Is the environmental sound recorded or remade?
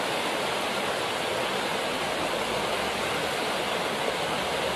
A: recorded